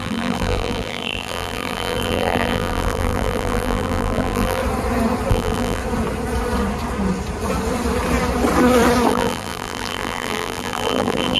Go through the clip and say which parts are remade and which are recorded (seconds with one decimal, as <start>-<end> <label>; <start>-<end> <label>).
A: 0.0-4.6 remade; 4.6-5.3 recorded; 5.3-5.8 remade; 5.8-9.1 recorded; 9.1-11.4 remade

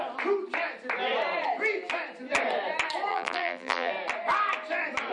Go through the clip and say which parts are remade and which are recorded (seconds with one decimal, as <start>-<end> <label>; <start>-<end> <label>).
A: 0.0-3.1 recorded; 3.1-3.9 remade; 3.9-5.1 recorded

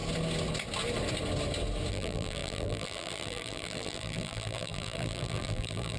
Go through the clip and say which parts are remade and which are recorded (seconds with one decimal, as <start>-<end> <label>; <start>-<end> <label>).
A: 0.0-1.9 recorded; 1.9-6.0 remade

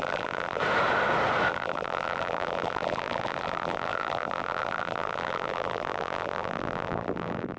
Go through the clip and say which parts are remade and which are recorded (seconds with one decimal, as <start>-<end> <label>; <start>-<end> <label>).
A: 0.0-0.6 remade; 0.6-1.5 recorded; 1.5-7.6 remade

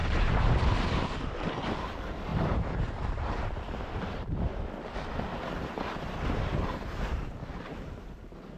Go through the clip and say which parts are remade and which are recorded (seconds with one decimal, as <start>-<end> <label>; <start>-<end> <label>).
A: 0.0-0.5 remade; 0.5-2.3 recorded; 2.3-5.1 remade; 5.1-8.6 recorded

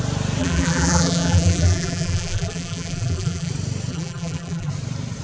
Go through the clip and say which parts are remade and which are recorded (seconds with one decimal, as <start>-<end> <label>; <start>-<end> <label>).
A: 0.0-0.4 recorded; 0.4-3.5 remade; 3.5-3.9 recorded; 3.9-4.7 remade; 4.7-5.2 recorded

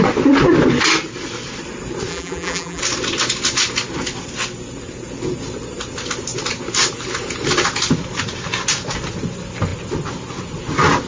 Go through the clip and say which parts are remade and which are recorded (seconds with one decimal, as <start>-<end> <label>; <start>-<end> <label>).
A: 0.0-2.1 recorded; 2.1-2.8 remade; 2.8-11.1 recorded

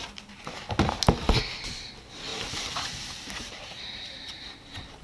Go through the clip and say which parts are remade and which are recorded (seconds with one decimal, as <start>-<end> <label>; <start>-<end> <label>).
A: 0.0-2.3 recorded; 2.3-4.5 remade; 4.5-5.0 recorded